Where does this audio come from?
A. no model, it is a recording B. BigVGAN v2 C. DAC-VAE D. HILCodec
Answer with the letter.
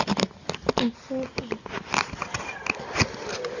A